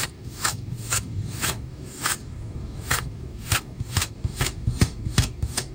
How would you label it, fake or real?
fake